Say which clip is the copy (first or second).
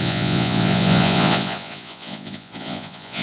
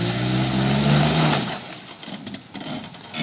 first